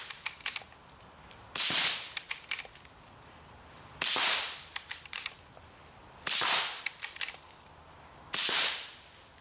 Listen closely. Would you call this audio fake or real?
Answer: fake